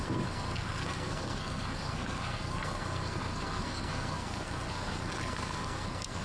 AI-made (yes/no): yes